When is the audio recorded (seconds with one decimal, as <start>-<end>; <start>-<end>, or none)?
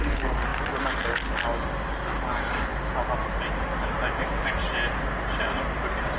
0.5-2.3; 2.7-4.1; 4.6-5.4